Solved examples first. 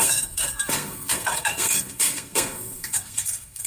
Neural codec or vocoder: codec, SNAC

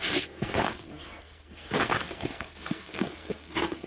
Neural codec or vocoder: codec, SNAC